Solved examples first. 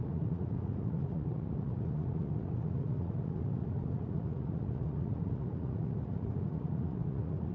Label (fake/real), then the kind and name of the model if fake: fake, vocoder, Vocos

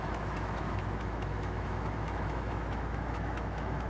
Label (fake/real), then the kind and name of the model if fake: fake, autoencoder, DAC-VAE